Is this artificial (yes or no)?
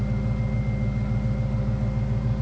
no